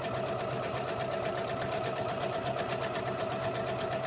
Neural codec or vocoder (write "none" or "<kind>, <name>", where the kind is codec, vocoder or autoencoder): none